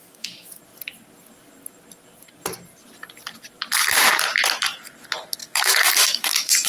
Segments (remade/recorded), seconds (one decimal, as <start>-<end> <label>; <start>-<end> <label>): 0.0-0.6 remade; 0.6-5.4 recorded; 5.4-6.7 remade